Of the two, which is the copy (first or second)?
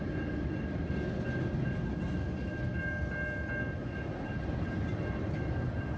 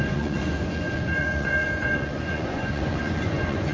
second